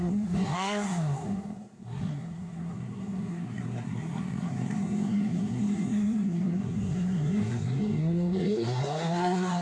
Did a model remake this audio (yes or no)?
yes